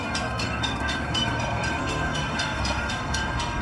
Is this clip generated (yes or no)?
yes